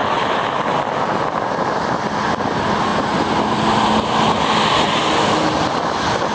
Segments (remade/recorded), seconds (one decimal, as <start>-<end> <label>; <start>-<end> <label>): 0.0-1.3 recorded; 1.3-2.9 remade; 2.9-4.4 recorded; 4.4-6.3 remade